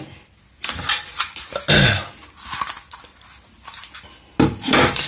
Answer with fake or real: real